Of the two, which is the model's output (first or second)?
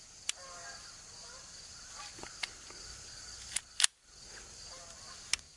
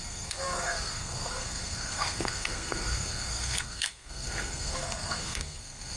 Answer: second